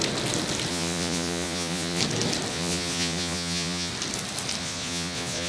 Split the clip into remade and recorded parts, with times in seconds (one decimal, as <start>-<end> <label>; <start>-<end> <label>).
0.0-0.7 recorded; 0.7-2.0 remade; 2.0-2.5 recorded; 2.5-3.9 remade; 3.9-4.6 recorded; 4.6-5.5 remade